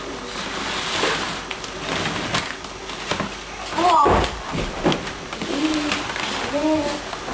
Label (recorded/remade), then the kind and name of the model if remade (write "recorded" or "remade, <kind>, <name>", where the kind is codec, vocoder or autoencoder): recorded